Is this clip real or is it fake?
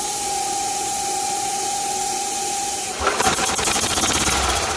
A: fake